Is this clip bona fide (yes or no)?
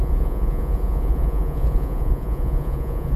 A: no